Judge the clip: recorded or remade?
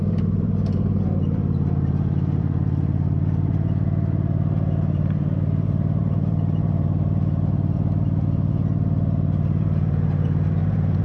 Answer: remade